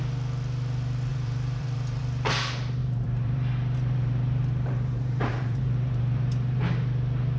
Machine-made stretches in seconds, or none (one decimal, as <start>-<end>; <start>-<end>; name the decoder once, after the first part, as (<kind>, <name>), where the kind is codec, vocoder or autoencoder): 1.1-2.0 (vocoder, BigVGAN v2); 2.8-6.6